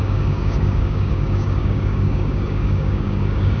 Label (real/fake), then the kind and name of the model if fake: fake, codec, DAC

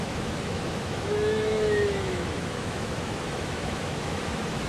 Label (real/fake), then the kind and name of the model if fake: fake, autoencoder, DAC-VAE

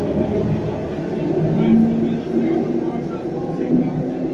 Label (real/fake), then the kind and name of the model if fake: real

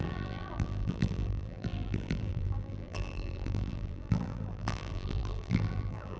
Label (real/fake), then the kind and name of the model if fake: fake, vocoder, BigVGAN v2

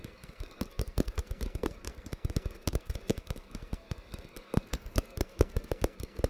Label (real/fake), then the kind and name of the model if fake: fake, codec, SNAC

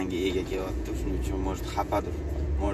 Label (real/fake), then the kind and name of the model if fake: fake, vocoder, Vocos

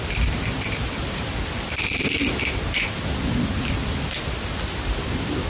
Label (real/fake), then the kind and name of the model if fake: real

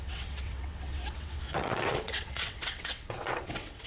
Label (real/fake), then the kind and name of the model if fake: fake, vocoder, WaveNeXt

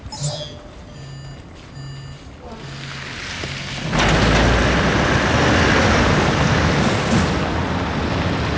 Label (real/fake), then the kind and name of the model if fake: real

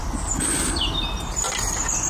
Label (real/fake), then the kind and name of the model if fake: real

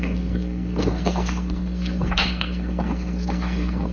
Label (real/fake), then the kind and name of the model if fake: fake, codec, SNAC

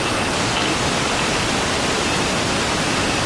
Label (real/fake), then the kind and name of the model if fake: real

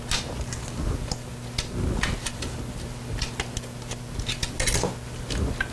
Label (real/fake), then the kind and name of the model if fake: real